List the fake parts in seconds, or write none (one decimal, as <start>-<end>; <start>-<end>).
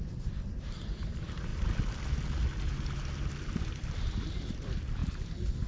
0.0-1.5; 4.1-5.7